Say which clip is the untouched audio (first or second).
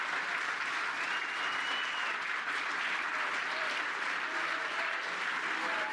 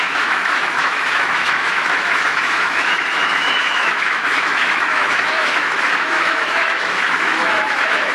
first